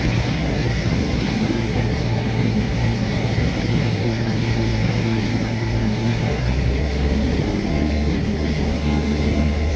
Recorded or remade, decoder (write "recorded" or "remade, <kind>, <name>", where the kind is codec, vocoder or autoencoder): remade, codec, SNAC